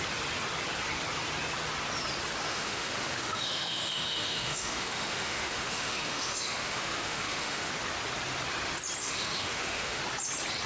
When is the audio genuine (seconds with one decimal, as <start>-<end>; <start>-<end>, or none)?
0.0-2.5; 7.7-9.0; 10.0-10.7